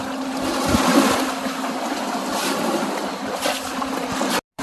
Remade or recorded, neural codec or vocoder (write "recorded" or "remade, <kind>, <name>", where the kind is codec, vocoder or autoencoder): recorded